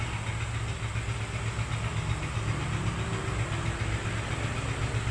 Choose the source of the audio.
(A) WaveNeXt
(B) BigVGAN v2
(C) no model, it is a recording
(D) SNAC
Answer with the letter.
C